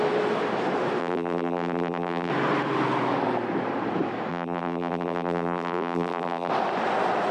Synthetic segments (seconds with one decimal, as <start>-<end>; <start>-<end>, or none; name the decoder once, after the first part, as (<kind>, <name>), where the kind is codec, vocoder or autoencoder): 1.0-2.3 (vocoder, BigVGAN v2); 4.3-6.5